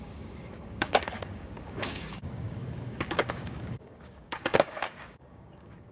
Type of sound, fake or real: fake